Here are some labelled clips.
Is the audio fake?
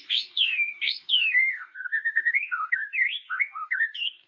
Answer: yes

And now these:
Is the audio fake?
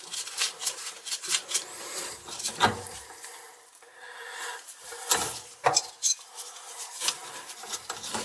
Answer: yes